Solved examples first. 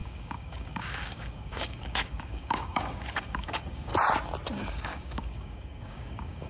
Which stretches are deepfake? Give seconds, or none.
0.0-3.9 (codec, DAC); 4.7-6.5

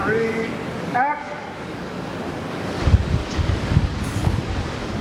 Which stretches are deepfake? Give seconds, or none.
0.0-5.0 (codec, DAC)

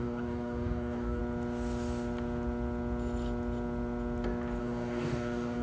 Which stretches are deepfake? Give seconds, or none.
0.0-1.2 (codec, DAC); 4.6-5.6

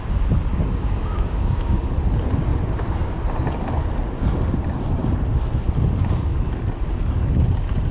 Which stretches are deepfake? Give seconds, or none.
0.5-1.9 (codec, DAC)

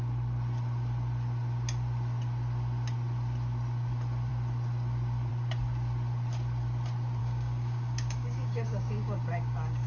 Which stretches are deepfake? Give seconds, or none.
7.2-9.9 (codec, DAC)